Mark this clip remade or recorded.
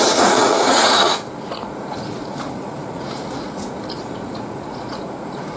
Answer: remade